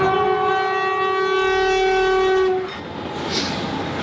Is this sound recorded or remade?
recorded